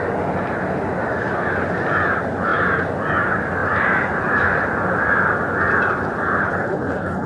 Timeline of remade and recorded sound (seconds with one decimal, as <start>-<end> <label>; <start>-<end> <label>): 0.0-6.4 recorded; 6.4-7.3 remade